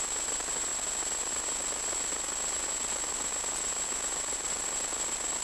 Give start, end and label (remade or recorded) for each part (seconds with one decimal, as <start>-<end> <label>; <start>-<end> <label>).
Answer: 0.0-5.4 recorded